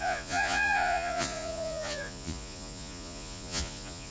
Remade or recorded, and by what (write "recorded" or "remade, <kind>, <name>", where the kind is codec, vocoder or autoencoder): remade, vocoder, Vocos